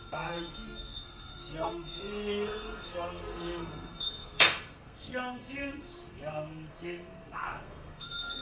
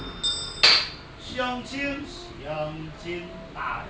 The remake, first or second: first